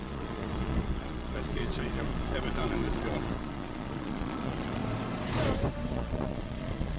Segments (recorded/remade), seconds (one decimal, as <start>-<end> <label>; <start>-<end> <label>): 0.0-4.8 remade; 4.8-5.9 recorded; 5.9-7.0 remade